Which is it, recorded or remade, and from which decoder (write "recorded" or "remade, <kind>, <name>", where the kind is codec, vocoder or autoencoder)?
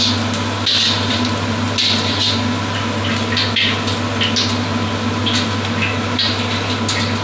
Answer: recorded